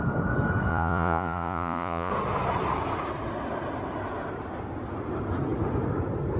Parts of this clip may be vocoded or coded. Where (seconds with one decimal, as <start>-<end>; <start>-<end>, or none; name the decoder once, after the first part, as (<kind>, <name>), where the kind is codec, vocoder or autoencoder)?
0.7-2.1 (vocoder, Vocos)